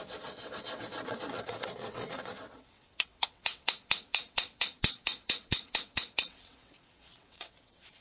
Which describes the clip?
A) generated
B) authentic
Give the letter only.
A